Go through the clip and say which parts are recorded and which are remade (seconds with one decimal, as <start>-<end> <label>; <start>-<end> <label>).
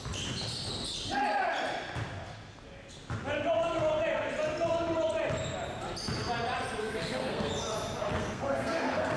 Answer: 0.0-6.8 recorded; 6.8-7.5 remade; 7.5-8.1 recorded; 8.1-9.2 remade